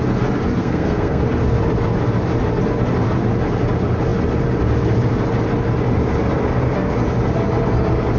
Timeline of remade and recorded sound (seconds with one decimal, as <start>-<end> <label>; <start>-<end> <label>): 0.0-0.6 recorded; 0.6-1.2 remade; 1.2-8.2 recorded